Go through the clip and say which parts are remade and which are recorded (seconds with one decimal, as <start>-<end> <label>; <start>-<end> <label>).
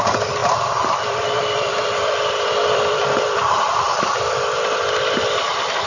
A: 0.0-5.9 remade